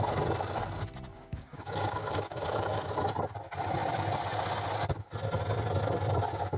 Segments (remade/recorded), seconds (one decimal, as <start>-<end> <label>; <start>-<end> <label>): 0.0-1.1 recorded; 1.1-2.9 remade; 2.9-6.6 recorded

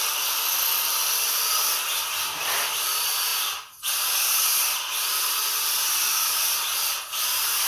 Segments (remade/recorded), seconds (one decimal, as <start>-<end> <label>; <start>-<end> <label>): 0.0-7.7 recorded

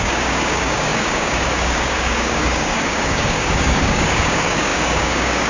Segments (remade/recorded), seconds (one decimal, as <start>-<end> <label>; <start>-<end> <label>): 0.0-5.5 remade

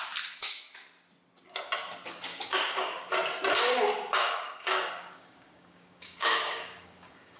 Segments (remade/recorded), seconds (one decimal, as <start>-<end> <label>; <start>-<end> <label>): 0.0-2.3 recorded; 2.3-3.1 remade; 3.1-4.2 recorded; 4.2-7.4 remade

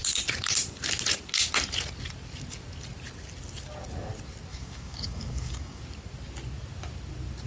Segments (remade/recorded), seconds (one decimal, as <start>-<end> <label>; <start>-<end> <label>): 0.0-4.5 recorded; 4.5-5.8 remade; 5.8-7.5 recorded

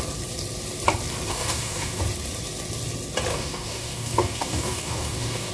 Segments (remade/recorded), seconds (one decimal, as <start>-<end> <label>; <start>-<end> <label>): 0.0-1.3 recorded; 1.3-2.0 remade; 2.0-3.3 recorded; 3.3-5.5 remade

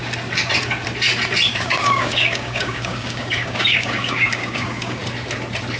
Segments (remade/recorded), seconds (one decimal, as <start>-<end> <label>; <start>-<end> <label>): 0.0-1.5 recorded; 1.5-5.0 remade; 5.0-5.8 recorded

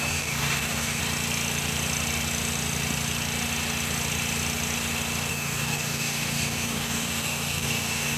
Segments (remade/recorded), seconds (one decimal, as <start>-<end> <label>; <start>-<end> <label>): 0.0-1.0 remade; 1.0-5.3 recorded; 5.3-8.2 remade